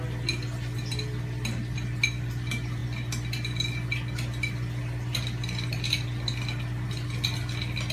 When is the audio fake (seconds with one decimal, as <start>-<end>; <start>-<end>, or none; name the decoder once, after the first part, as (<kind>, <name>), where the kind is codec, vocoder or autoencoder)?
none